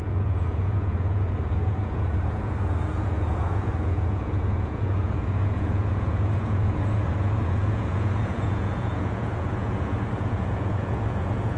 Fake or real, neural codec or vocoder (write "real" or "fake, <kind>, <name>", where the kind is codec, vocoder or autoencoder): fake, vocoder, Vocos